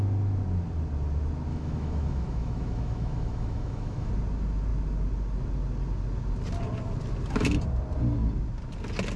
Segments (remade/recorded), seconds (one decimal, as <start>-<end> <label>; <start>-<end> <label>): 0.0-1.5 recorded; 1.5-4.1 remade; 4.1-9.2 recorded